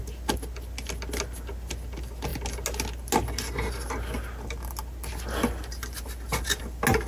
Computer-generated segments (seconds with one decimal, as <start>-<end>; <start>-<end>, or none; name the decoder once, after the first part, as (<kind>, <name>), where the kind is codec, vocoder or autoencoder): none